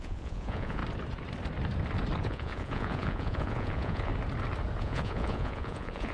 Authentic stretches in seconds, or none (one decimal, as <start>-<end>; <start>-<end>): 0.8-2.2; 4.1-4.8